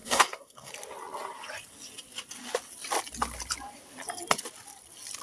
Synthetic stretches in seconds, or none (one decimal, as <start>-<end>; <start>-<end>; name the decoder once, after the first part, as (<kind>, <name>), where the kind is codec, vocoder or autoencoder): 0.0-0.7 (codec, SNAC)